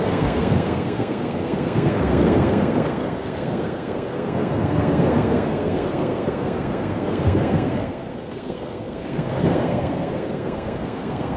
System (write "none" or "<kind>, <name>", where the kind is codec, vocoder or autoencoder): codec, SNAC